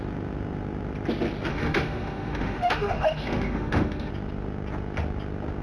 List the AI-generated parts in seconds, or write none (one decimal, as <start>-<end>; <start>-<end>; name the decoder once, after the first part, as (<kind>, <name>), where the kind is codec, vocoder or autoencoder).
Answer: 1.5-4.1 (autoencoder, DAC-VAE)